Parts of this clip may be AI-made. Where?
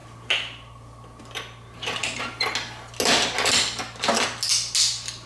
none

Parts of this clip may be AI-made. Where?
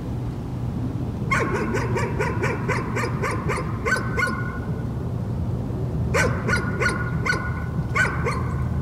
none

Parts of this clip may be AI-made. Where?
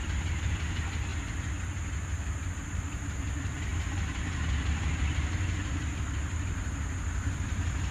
0.0-1.1; 2.5-7.9